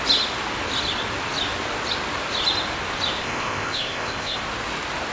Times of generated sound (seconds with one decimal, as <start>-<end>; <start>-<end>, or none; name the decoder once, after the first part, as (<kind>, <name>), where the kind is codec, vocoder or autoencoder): 3.2-4.4 (codec, ZipCodec)